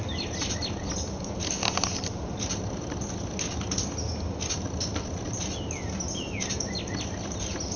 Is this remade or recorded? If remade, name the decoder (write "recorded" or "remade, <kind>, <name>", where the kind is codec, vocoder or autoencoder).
recorded